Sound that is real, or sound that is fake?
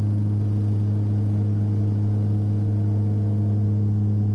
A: real